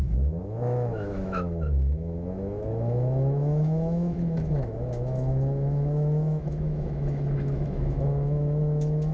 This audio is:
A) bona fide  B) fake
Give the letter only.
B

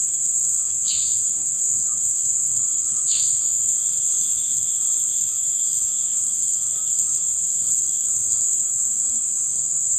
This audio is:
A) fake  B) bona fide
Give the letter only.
A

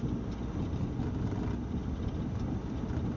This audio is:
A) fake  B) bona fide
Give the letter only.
B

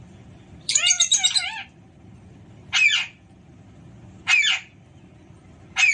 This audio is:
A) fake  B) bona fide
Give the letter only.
B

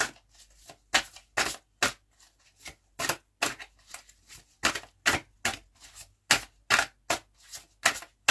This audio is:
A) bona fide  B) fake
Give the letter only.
A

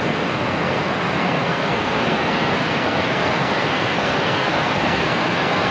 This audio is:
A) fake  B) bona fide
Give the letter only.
A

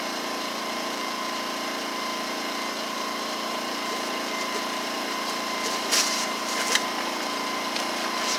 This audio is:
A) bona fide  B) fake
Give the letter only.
B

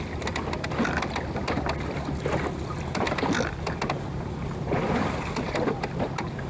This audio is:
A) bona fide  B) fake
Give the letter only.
A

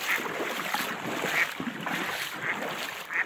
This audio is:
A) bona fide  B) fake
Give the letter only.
A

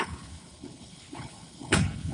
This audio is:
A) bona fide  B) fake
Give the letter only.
B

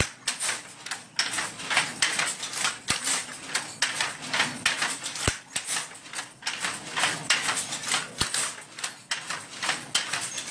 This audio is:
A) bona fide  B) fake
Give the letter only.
A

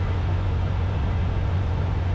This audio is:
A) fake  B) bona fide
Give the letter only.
A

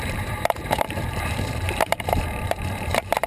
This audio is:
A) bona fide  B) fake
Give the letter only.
B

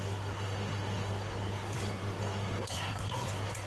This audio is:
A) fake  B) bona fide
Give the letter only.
A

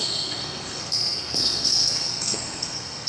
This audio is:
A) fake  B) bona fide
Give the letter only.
A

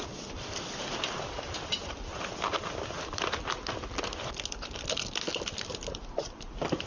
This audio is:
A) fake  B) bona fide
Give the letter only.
B